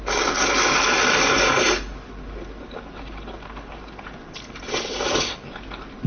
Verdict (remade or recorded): recorded